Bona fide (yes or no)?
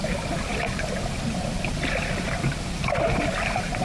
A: no